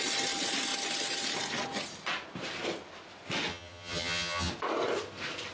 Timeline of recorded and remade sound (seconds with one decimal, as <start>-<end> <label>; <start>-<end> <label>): 0.0-3.5 recorded; 3.5-4.5 remade; 4.5-5.5 recorded